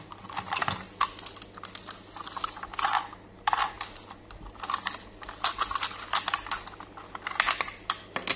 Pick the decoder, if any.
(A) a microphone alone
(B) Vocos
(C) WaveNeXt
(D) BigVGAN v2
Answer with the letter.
A